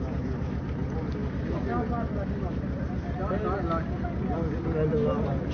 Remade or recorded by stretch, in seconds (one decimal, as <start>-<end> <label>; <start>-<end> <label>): 0.0-5.5 recorded